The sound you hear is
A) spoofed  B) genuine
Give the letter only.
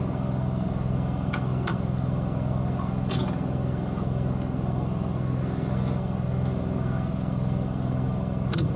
A